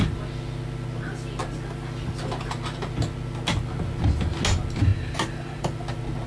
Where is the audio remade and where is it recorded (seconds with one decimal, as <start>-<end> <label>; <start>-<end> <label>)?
0.0-4.9 recorded; 4.9-5.7 remade; 5.7-6.3 recorded